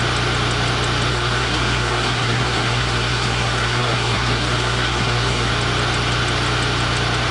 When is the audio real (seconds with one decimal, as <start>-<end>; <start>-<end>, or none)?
0.0-1.1; 5.5-7.3